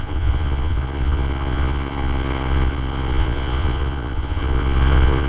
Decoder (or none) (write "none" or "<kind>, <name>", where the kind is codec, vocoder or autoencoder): vocoder, Vocos